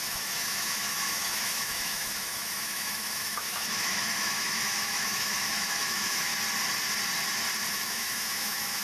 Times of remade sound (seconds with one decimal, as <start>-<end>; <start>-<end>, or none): 0.0-6.3; 7.7-8.8